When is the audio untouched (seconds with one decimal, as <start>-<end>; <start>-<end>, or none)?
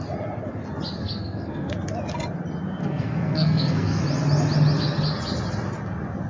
0.0-1.0; 1.7-2.8; 4.0-6.3